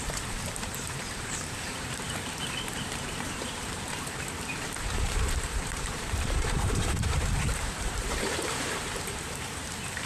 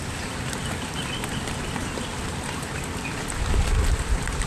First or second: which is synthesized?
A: first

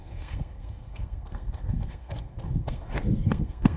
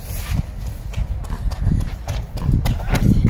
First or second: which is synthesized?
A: first